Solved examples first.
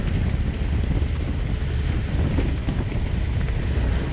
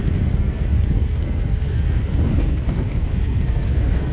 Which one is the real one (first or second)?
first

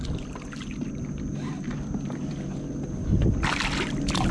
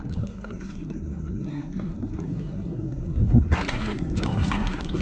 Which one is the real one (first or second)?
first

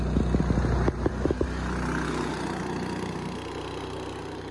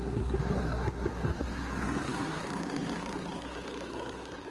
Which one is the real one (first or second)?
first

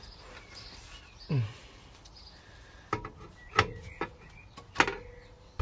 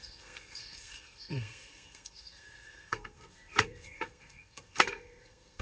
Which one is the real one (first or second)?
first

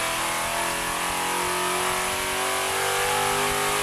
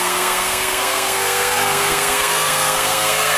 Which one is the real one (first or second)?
first